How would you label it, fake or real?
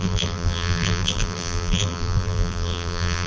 fake